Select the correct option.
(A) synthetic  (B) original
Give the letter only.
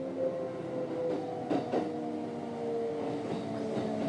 B